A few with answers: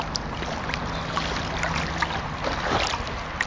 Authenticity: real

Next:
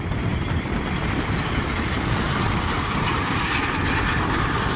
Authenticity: real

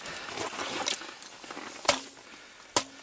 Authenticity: real